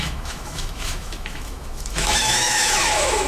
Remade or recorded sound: remade